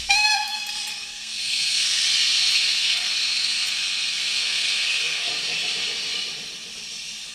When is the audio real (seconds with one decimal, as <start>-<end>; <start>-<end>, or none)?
2.0-2.5; 5.3-7.3